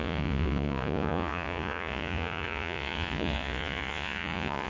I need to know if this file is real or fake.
fake